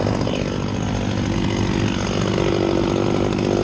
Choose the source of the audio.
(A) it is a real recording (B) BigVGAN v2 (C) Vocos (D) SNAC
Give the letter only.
A